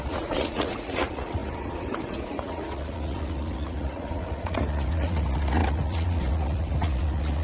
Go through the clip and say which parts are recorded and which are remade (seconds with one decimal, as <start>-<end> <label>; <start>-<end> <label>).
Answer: 0.0-7.4 remade